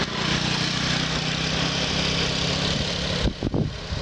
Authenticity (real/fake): real